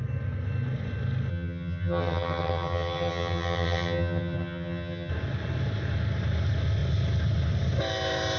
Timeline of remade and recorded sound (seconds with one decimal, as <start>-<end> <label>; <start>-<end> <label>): 0.0-1.3 recorded; 1.3-5.1 remade; 5.1-8.4 recorded